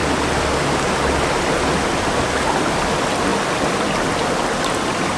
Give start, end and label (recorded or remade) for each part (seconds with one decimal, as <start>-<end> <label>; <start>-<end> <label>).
0.0-5.2 recorded